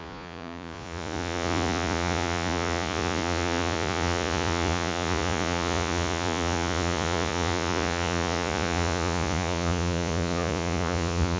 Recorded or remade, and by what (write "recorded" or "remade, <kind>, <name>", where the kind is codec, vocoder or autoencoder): remade, vocoder, Vocos